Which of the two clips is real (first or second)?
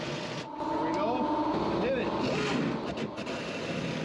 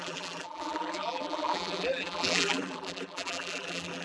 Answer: first